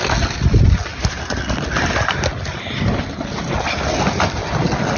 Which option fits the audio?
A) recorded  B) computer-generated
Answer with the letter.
A